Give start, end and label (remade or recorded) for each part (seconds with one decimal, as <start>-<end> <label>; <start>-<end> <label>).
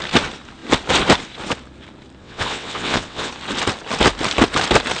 0.0-2.2 recorded; 2.2-3.3 remade; 3.3-5.0 recorded